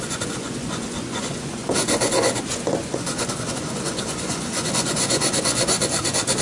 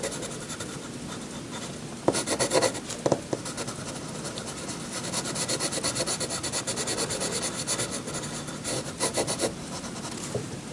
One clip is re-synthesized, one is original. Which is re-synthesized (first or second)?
first